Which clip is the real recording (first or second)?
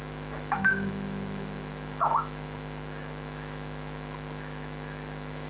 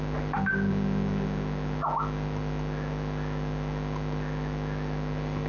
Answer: second